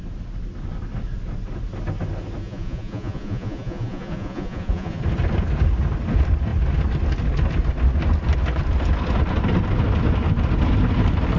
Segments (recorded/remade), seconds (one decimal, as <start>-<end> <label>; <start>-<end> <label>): 0.0-2.4 recorded; 2.4-5.0 remade; 5.0-11.4 recorded